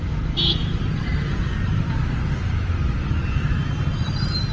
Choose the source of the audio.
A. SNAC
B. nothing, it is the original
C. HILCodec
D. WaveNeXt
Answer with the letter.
B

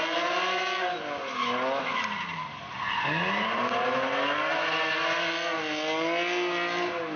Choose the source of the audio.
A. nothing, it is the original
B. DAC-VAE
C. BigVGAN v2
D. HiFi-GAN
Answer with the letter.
A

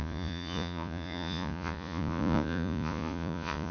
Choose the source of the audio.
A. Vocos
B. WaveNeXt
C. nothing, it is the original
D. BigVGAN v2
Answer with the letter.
A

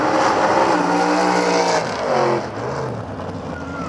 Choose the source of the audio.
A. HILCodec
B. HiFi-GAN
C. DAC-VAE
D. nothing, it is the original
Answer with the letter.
D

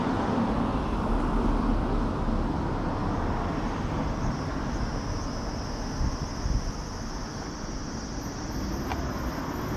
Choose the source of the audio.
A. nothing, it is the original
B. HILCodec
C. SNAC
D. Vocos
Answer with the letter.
A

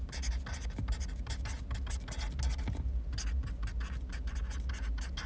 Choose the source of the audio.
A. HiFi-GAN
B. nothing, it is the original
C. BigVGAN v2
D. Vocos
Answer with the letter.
B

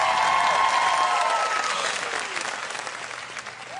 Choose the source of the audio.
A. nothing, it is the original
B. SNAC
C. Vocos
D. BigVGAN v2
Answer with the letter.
A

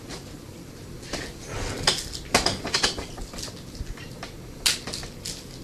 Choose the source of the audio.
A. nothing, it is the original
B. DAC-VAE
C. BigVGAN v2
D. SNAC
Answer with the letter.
A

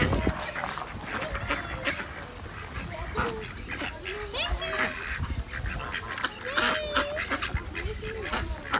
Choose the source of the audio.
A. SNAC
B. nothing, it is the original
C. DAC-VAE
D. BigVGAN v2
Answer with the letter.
B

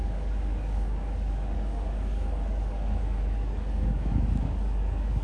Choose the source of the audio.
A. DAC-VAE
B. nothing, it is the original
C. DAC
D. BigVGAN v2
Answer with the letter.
C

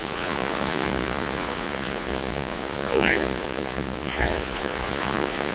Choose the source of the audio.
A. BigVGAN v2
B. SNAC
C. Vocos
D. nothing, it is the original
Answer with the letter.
C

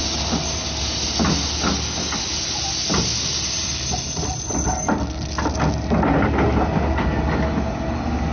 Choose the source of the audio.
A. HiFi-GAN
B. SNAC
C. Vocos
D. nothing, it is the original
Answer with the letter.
D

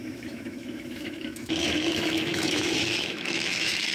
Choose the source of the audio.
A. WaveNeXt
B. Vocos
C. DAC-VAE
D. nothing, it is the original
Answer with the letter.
C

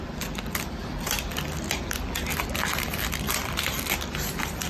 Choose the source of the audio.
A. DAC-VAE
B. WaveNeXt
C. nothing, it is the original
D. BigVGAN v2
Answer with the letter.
D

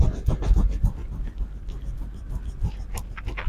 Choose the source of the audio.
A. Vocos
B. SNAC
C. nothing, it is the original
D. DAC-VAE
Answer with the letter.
C